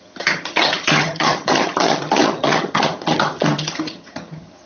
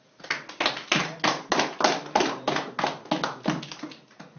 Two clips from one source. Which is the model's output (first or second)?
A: first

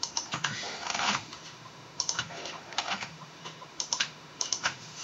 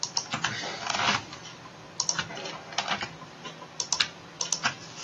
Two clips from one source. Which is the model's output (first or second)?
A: first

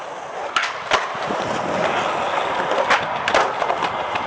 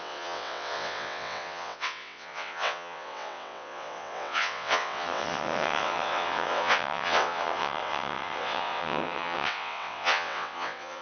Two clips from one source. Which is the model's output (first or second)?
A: second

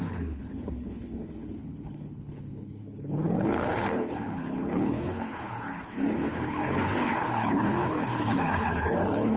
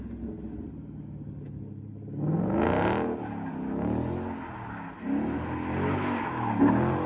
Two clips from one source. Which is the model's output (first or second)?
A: first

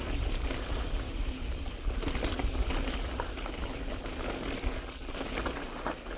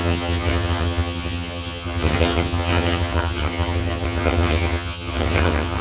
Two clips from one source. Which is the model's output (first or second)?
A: second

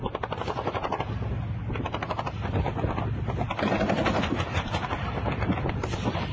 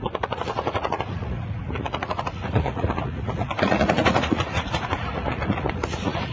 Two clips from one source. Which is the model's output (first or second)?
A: second